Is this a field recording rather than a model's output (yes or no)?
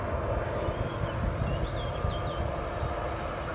yes